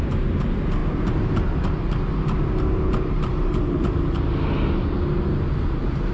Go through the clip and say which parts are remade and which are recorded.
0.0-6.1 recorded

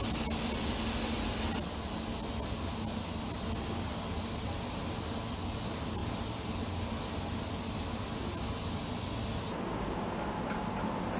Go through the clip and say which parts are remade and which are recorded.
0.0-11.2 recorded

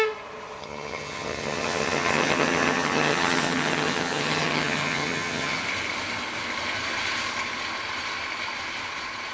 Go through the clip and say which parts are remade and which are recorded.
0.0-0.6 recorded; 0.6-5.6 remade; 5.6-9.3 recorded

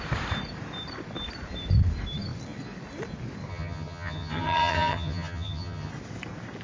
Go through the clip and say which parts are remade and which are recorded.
0.0-3.5 recorded; 3.5-5.9 remade; 5.9-6.6 recorded